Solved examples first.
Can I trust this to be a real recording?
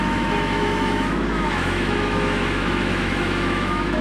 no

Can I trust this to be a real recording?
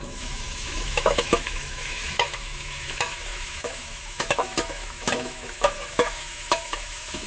no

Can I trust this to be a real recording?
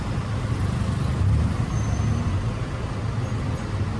yes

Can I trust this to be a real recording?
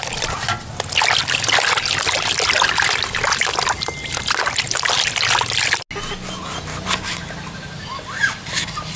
yes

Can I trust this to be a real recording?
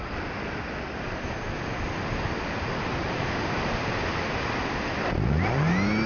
yes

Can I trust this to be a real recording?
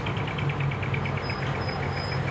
yes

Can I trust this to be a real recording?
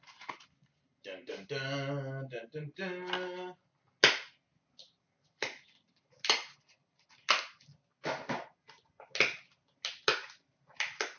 yes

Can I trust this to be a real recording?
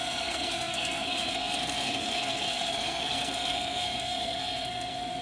no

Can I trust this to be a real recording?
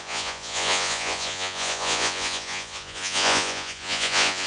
no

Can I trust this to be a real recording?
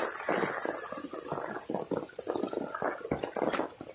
yes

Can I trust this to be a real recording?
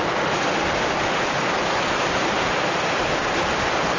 no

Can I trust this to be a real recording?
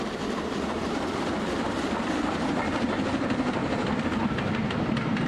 yes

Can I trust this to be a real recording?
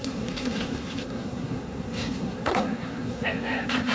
no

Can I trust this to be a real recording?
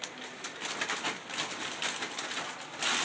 yes